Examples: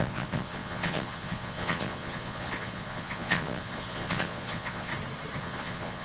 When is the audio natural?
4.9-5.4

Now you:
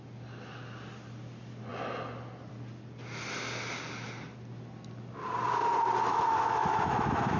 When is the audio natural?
0.0-6.1

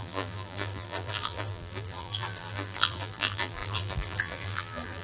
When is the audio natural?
none

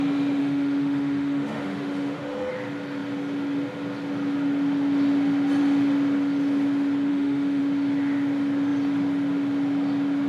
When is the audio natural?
0.0-0.4; 2.5-7.1; 7.6-10.3

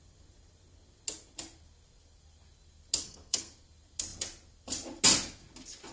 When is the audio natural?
0.0-3.0; 3.5-5.9

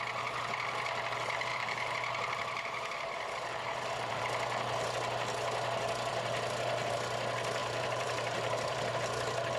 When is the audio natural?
0.0-1.5; 4.2-7.6; 8.9-9.6

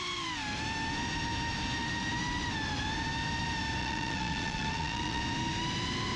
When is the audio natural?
0.0-3.8; 5.2-6.2